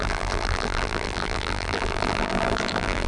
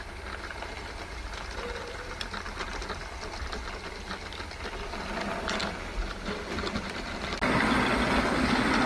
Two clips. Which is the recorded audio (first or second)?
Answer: second